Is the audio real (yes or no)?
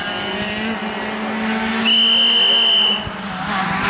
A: yes